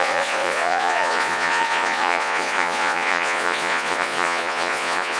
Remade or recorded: remade